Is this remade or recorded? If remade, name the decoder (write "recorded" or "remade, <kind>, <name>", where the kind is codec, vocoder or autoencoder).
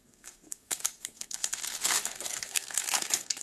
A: remade, codec, SNAC